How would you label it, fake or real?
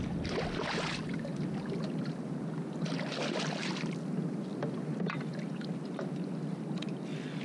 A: real